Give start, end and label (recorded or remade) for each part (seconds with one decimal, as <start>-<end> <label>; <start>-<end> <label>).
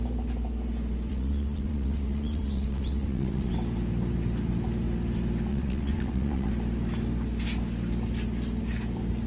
0.0-1.1 recorded; 1.1-3.5 remade; 3.5-5.5 recorded; 5.5-6.5 remade; 6.5-9.3 recorded